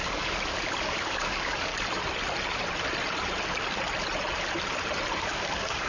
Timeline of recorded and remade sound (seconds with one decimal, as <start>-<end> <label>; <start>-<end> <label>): 0.0-1.7 remade; 1.7-5.2 recorded; 5.2-5.9 remade